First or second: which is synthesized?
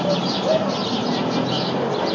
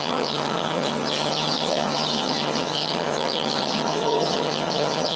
second